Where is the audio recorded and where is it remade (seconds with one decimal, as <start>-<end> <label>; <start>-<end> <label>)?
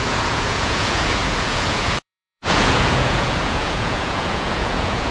0.0-5.1 remade